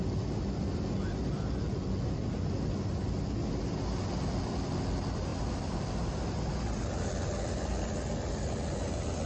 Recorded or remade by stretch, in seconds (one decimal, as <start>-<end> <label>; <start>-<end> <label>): 0.0-9.3 recorded